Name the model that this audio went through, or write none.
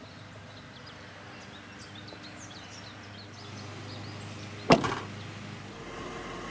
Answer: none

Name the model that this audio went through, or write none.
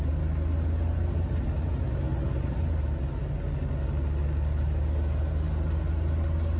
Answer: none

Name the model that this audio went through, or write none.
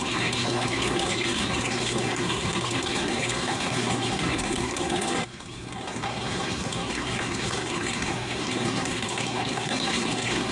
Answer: codec, SNAC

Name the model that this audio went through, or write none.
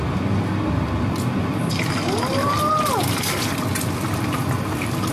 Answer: none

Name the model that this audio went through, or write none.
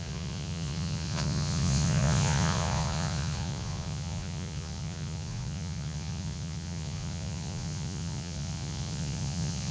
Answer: vocoder, Vocos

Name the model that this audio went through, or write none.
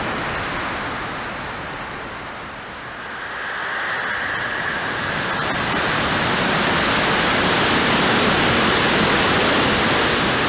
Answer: none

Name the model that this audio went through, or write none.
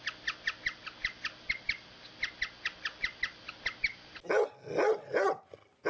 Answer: none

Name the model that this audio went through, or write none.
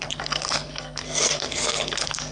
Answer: codec, SNAC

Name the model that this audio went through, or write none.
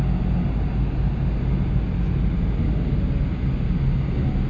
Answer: none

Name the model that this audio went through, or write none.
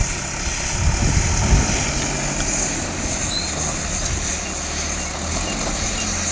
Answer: none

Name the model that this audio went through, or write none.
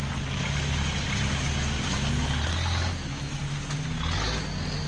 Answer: none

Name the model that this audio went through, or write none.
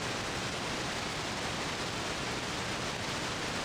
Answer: none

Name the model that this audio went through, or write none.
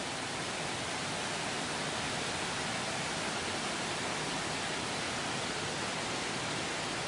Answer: none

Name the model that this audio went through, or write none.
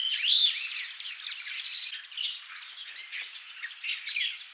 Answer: none